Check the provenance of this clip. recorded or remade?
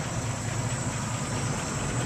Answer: recorded